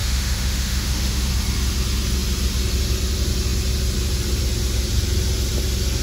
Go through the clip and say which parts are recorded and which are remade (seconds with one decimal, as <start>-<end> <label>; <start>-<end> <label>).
0.0-1.3 remade; 1.3-6.0 recorded